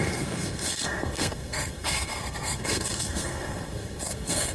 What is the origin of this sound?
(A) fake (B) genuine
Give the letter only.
A